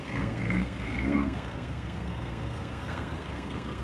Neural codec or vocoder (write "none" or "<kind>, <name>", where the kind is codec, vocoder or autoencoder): codec, SNAC